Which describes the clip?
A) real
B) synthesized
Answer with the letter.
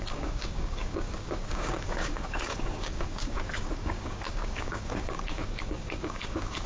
B